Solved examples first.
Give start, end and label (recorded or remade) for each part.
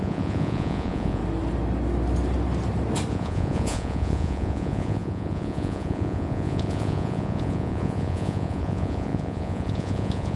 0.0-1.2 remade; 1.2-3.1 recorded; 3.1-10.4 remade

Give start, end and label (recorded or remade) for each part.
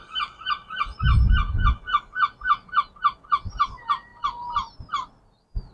0.0-5.7 recorded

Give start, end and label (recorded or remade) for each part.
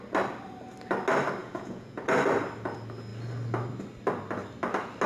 0.0-1.4 recorded; 1.4-2.0 remade; 2.0-5.1 recorded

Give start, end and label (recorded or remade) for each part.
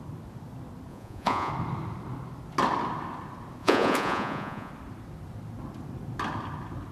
0.0-0.9 recorded; 0.9-1.5 remade; 1.5-3.6 recorded; 3.6-4.7 remade; 4.7-6.9 recorded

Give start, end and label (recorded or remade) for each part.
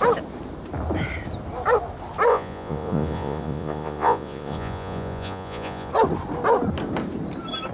0.0-2.3 recorded; 2.3-5.9 remade; 5.9-7.7 recorded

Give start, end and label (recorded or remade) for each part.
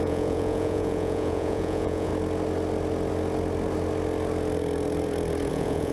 0.0-2.1 remade; 2.1-5.5 recorded; 5.5-5.9 remade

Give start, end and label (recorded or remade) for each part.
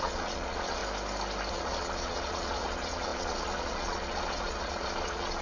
0.0-0.8 remade; 0.8-1.5 recorded; 1.5-5.4 remade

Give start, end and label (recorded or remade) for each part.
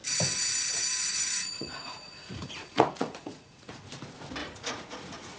0.0-1.1 recorded; 1.1-4.0 remade; 4.0-4.4 recorded; 4.4-5.4 remade